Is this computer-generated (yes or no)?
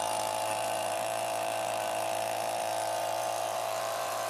yes